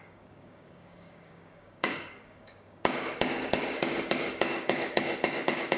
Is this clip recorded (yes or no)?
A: no